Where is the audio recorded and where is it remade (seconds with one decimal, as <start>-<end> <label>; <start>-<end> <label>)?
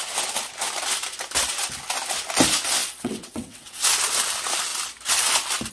0.0-2.8 recorded; 2.8-3.8 remade; 3.8-5.7 recorded